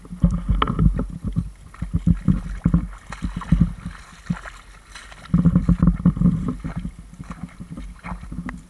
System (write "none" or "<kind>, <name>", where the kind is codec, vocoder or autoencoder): none